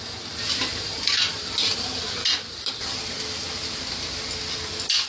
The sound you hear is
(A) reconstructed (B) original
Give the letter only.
B